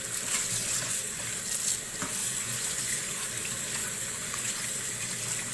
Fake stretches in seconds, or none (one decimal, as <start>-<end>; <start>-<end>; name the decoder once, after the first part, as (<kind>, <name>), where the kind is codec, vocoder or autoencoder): 0.6-1.2 (vocoder, Vocos); 2.2-3.3; 3.8-5.1